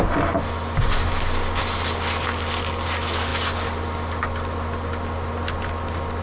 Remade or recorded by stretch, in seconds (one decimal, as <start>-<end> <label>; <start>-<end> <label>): 0.0-6.2 recorded